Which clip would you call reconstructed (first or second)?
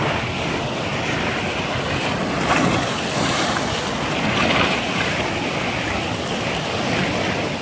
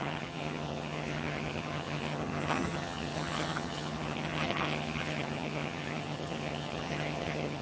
second